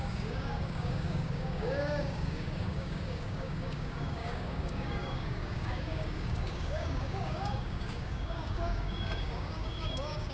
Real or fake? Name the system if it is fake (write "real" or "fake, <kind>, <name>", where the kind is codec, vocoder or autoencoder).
fake, codec, DAC